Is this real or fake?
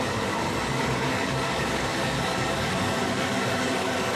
fake